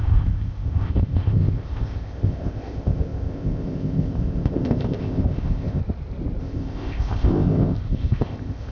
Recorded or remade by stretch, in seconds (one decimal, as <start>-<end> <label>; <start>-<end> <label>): 0.0-5.8 remade; 5.8-6.4 recorded; 6.4-8.7 remade